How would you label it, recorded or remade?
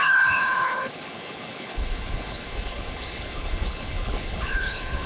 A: remade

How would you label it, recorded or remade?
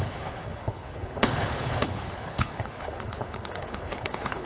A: remade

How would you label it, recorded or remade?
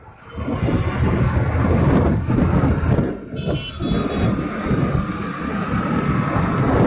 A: recorded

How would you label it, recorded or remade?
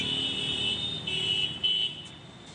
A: recorded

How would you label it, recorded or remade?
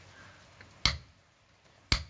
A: recorded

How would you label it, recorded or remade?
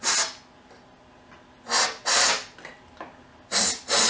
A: recorded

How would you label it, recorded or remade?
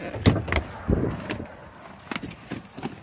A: recorded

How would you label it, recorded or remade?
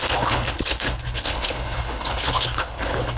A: remade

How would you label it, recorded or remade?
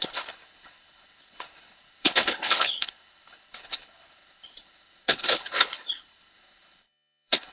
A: remade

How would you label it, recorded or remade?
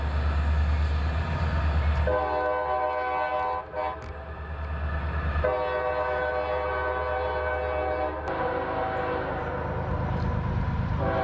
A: recorded